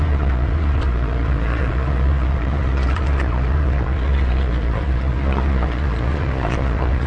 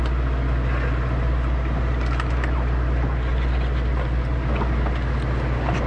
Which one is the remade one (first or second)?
first